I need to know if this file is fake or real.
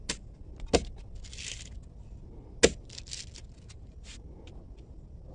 real